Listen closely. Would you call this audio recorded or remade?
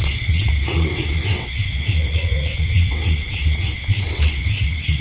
remade